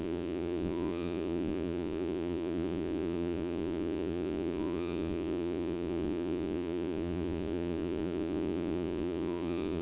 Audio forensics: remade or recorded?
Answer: remade